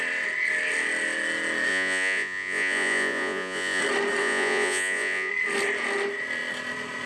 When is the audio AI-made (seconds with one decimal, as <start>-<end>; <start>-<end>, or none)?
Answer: 1.7-3.8; 4.2-5.3